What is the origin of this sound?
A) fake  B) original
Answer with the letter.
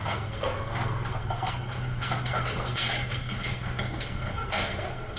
A